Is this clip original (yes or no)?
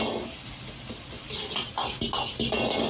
yes